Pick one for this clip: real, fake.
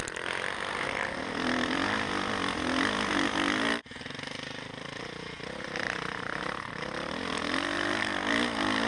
fake